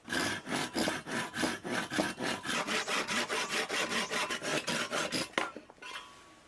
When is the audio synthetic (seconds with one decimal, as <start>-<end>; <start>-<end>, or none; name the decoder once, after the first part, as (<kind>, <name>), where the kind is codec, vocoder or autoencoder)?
none